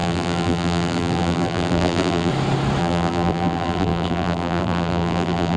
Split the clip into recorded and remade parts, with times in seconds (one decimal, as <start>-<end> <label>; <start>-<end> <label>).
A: 0.0-2.3 remade; 2.3-2.8 recorded; 2.8-5.6 remade